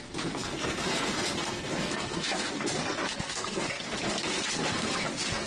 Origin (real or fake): fake